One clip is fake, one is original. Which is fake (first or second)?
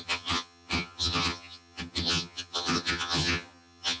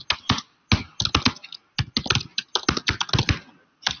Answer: first